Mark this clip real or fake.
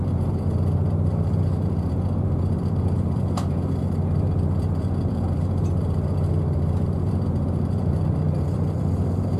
fake